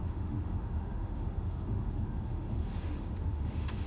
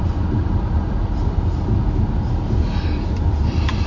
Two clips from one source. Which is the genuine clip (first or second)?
second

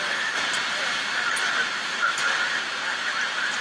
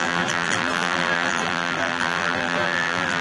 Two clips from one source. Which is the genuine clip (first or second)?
first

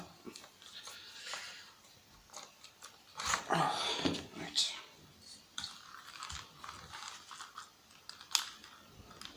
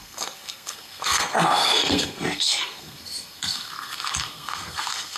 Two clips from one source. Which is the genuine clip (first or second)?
first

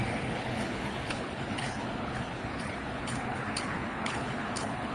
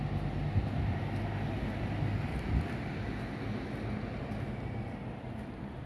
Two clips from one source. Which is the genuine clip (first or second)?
second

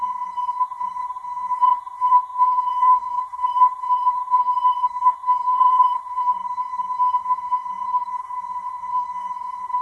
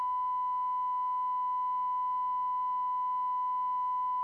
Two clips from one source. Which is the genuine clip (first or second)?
second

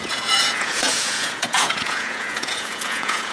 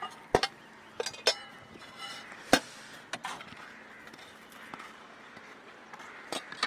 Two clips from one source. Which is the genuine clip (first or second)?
second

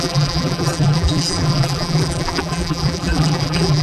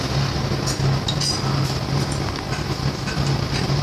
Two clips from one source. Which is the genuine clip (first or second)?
second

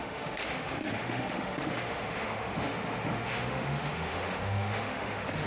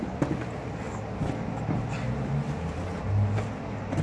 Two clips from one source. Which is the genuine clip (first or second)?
second